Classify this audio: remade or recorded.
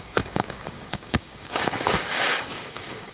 remade